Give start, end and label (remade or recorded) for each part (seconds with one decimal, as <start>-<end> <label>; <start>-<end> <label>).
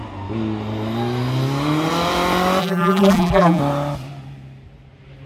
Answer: 0.0-2.6 recorded; 2.6-3.6 remade; 3.6-5.3 recorded